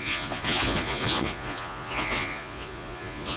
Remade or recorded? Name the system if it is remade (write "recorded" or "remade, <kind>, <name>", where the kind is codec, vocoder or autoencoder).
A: remade, vocoder, Vocos